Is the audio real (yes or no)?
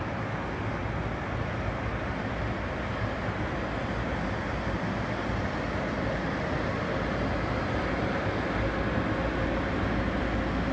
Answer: yes